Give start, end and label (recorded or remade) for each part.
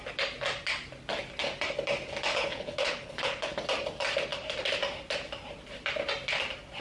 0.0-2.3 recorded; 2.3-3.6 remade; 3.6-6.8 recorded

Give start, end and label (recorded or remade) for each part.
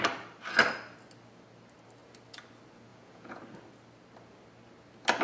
0.0-2.9 recorded; 2.9-3.4 remade; 3.4-5.2 recorded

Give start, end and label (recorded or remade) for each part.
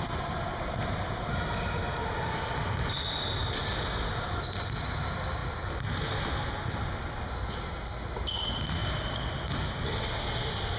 0.0-10.8 recorded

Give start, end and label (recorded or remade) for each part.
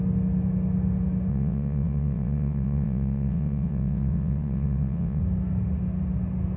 0.0-1.3 recorded; 1.3-5.2 remade; 5.2-6.6 recorded